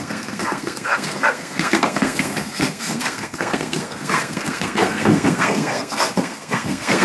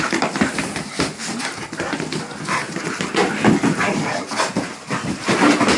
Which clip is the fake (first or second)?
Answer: first